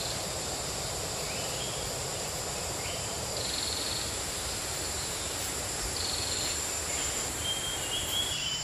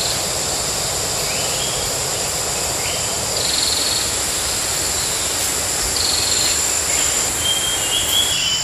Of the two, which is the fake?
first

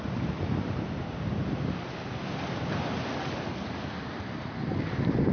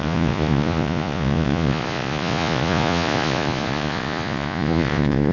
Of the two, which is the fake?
second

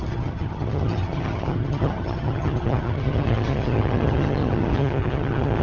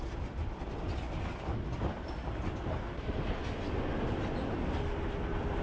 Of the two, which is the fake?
first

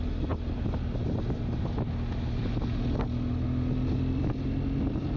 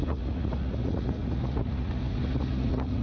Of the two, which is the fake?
second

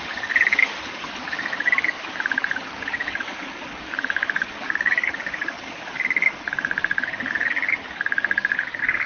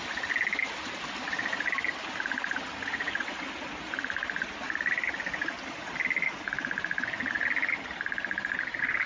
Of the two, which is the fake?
first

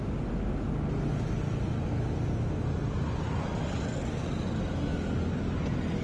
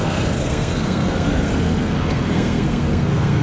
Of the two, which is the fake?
second